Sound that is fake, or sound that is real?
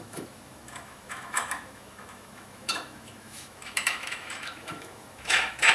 fake